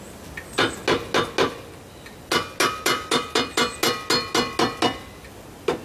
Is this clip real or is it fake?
real